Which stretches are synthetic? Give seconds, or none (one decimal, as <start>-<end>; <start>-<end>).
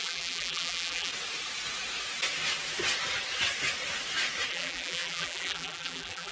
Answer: 0.0-1.1; 4.5-6.3